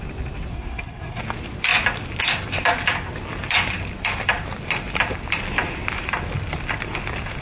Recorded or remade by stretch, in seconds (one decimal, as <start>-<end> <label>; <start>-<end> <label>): 0.0-0.5 recorded; 0.5-1.2 remade; 1.2-7.4 recorded